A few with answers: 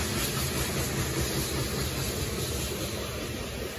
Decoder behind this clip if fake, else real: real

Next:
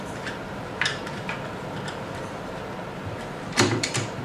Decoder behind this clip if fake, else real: fake, vocoder, BigVGAN v2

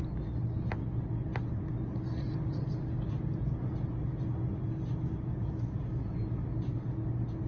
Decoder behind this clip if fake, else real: real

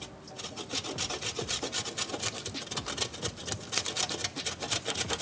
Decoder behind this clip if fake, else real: real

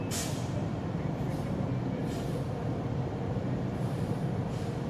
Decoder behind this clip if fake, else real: fake, vocoder, BigVGAN v2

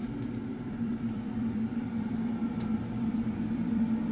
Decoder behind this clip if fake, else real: fake, vocoder, BigVGAN v2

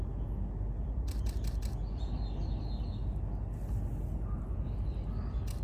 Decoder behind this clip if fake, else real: real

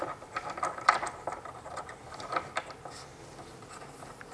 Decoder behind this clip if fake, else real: real